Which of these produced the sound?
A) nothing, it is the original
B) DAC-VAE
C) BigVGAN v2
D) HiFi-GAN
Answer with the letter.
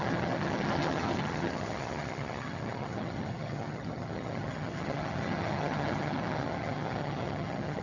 D